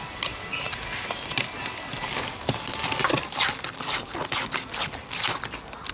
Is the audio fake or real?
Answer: real